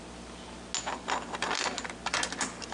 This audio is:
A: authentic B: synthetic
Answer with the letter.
A